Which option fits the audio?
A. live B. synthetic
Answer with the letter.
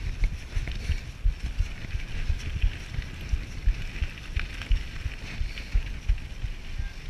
A